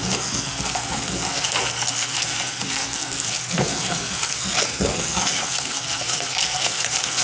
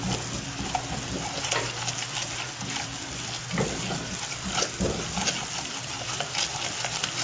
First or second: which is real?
second